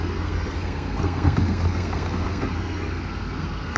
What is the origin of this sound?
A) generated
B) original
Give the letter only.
A